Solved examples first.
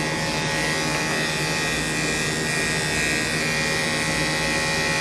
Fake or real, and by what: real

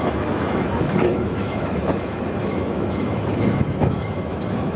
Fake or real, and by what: fake, autoencoder, DAC-VAE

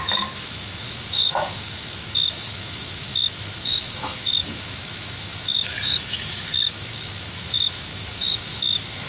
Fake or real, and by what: fake, autoencoder, DAC-VAE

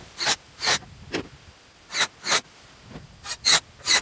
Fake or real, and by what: real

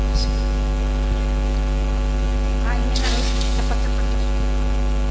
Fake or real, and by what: real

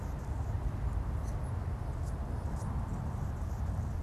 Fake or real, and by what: real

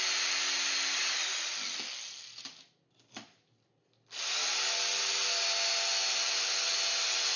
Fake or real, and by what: real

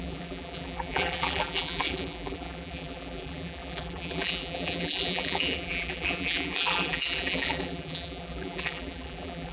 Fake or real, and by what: fake, vocoder, BigVGAN v2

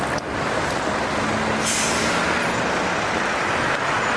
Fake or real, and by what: real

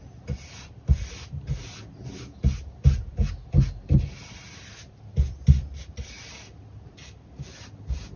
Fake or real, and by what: real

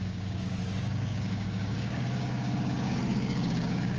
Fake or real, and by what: fake, codec, DAC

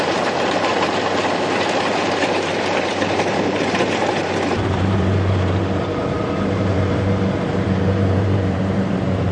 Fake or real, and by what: fake, vocoder, BigVGAN v2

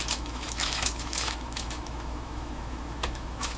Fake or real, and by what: fake, autoencoder, DAC-VAE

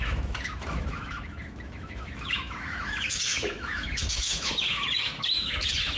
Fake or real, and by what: fake, autoencoder, DAC-VAE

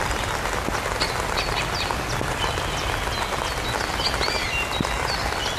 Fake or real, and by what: real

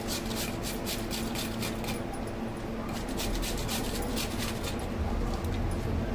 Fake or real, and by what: real